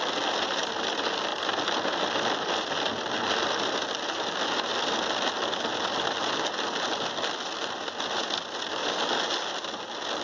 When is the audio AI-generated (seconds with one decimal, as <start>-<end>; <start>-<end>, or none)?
none